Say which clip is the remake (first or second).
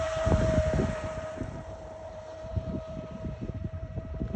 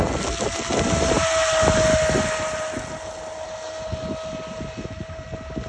first